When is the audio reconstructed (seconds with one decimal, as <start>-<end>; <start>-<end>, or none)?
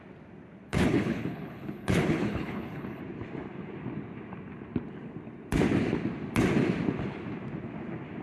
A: 0.7-3.0